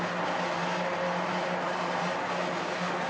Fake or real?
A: real